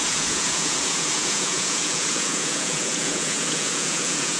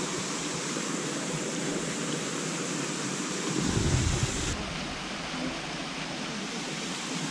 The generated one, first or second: first